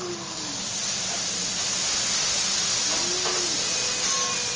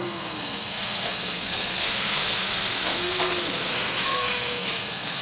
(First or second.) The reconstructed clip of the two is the second